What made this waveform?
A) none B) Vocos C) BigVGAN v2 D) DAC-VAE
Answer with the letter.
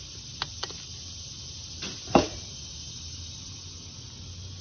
A